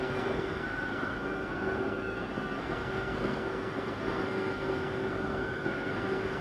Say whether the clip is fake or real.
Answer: fake